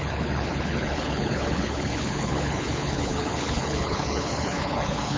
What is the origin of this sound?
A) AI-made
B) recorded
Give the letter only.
A